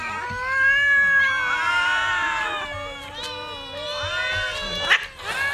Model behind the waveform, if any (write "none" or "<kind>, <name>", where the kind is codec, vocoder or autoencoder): none